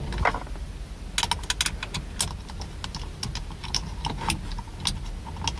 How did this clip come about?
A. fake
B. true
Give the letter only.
B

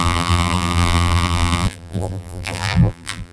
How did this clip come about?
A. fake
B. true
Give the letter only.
A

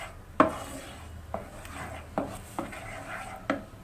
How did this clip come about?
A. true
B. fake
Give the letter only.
A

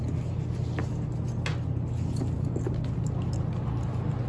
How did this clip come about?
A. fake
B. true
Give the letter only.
B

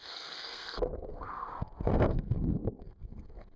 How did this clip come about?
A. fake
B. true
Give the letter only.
A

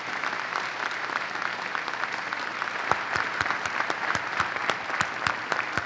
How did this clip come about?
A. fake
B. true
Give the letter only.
B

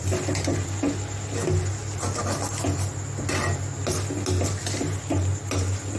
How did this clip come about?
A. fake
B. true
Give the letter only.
B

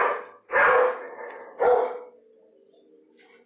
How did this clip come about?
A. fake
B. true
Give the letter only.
B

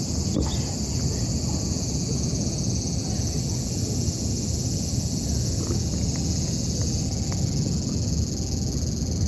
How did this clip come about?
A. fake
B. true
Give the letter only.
B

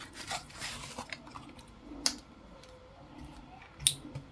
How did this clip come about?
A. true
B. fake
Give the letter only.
A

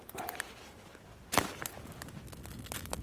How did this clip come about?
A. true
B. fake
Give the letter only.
A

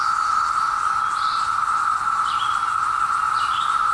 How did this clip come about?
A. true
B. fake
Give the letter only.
A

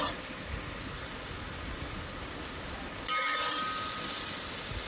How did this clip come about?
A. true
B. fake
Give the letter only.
A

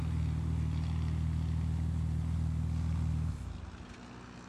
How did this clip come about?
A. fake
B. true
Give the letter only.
B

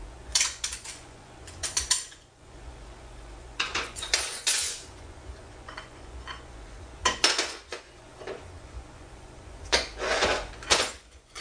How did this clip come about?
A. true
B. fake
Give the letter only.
B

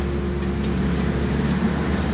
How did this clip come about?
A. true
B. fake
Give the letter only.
A